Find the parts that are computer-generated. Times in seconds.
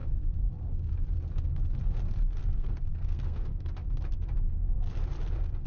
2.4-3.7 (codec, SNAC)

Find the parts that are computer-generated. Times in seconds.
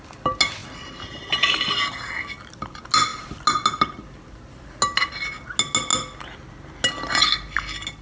none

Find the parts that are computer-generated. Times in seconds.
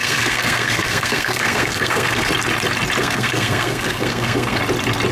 0.0-2.3 (codec, SNAC); 3.0-4.6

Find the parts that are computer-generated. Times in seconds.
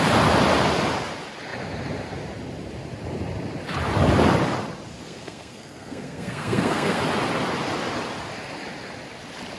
5.0-7.0 (codec, SNAC)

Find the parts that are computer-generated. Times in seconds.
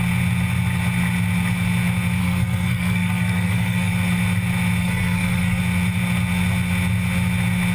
2.2-3.9 (codec, SNAC); 4.8-5.6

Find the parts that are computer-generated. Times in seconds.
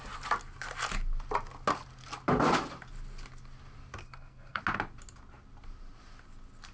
4.0-4.6 (codec, SNAC)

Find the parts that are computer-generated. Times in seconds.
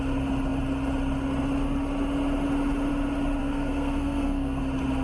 3.4-4.6 (codec, SNAC)